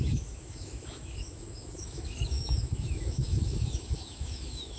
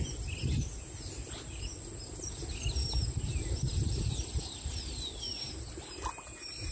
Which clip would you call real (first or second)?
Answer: second